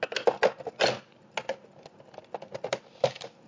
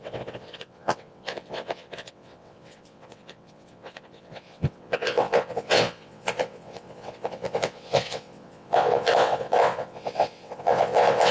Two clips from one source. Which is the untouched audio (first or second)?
first